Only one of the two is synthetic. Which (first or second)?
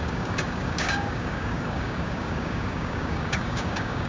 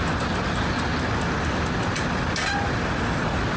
first